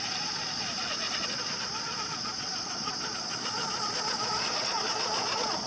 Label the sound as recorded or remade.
remade